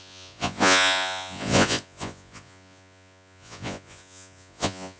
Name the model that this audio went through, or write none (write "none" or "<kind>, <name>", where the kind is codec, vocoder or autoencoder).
vocoder, Vocos